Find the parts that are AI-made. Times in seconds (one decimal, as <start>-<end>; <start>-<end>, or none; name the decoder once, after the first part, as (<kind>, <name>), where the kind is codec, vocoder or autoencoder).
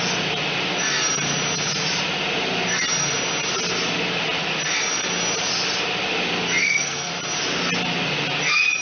6.6-7.1 (codec, SNAC)